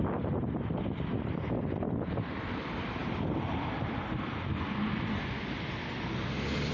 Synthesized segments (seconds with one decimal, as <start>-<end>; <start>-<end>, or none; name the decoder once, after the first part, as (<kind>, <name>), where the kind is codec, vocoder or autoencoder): none